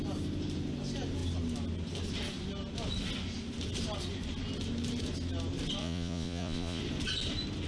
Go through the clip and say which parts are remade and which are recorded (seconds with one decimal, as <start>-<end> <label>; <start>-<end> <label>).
0.0-5.8 recorded; 5.8-6.8 remade; 6.8-7.7 recorded